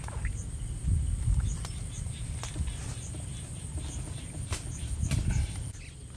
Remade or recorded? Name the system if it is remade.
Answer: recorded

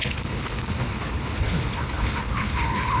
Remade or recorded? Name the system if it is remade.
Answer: remade, codec, HILCodec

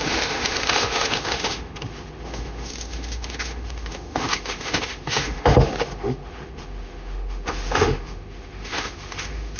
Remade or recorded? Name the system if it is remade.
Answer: remade, autoencoder, DAC-VAE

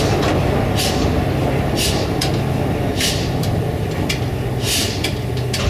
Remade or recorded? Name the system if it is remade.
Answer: recorded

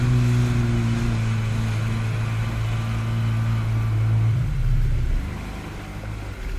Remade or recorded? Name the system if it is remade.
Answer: recorded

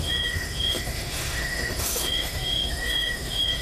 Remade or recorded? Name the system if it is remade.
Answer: remade, autoencoder, DAC-VAE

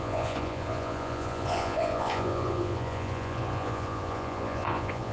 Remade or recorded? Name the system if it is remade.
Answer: remade, vocoder, Vocos